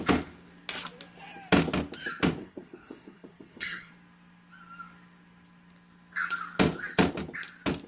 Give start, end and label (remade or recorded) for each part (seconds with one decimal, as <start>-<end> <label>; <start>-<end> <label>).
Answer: 0.0-2.4 recorded; 2.4-3.9 remade; 3.9-7.9 recorded